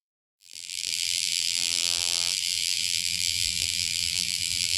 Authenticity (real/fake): fake